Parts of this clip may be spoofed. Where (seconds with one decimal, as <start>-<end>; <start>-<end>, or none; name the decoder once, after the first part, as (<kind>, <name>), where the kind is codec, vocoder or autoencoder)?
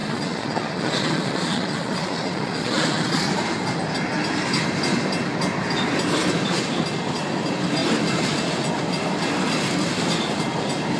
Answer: 0.0-3.3 (vocoder, Vocos)